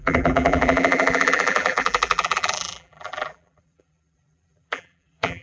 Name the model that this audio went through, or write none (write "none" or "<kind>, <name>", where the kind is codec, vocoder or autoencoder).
vocoder, BigVGAN v2